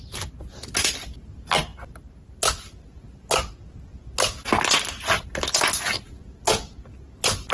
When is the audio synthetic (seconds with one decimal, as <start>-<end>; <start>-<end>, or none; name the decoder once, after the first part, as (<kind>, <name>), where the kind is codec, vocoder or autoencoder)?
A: none